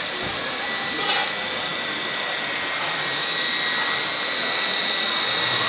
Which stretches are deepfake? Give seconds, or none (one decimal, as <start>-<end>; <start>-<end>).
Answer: none